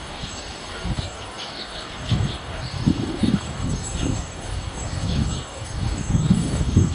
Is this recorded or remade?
remade